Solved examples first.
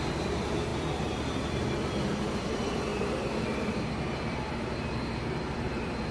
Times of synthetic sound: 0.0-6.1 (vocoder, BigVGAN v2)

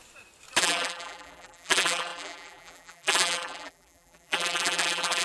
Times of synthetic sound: 0.6-5.2 (vocoder, BigVGAN v2)

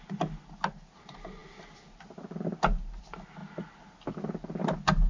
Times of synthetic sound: none

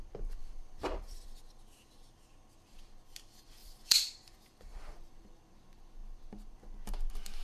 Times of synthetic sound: 0.4-1.4 (vocoder, BigVGAN v2); 3.6-5.4